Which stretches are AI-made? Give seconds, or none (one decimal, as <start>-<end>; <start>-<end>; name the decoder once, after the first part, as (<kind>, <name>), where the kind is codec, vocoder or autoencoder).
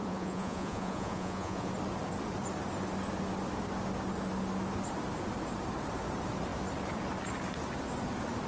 0.0-1.7 (vocoder, Vocos)